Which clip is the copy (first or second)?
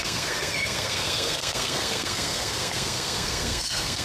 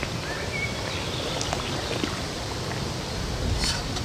first